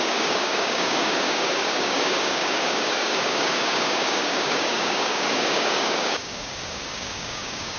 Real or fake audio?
fake